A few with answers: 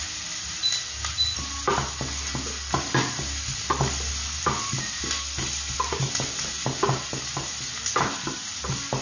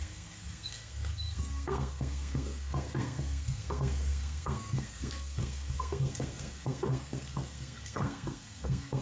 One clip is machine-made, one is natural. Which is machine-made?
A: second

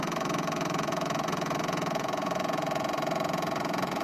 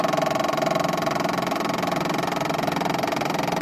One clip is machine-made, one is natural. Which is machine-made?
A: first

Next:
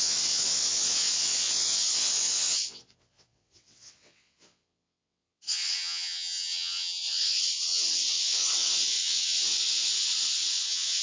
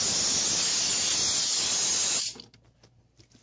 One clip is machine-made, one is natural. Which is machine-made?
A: first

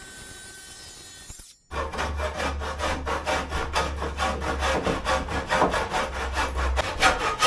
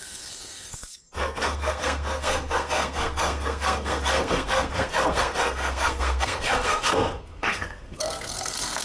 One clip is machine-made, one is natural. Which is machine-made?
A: second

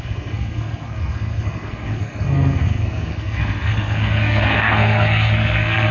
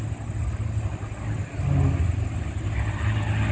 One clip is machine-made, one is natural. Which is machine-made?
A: first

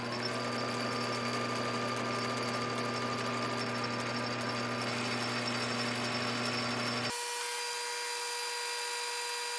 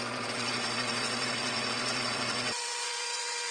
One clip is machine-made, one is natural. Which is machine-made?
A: second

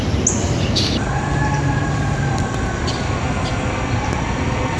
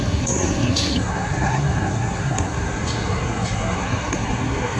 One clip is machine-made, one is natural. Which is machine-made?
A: second